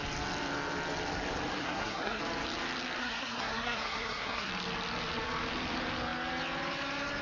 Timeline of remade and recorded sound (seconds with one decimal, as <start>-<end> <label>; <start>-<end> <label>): 0.0-1.6 recorded; 1.6-2.2 remade; 2.2-3.0 recorded; 3.0-4.5 remade; 4.5-7.2 recorded